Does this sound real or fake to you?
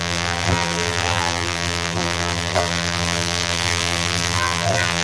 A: fake